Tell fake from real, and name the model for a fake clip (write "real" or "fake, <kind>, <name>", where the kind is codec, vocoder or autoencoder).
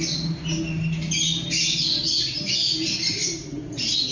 real